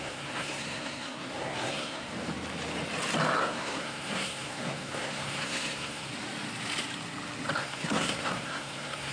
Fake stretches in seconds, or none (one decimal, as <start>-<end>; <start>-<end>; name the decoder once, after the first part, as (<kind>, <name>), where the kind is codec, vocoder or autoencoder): 0.0-2.1 (codec, SNAC); 3.4-6.1; 7.6-9.1